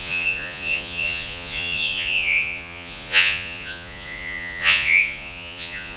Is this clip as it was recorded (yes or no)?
no